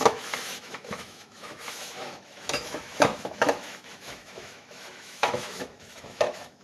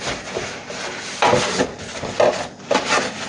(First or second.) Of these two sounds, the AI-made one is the first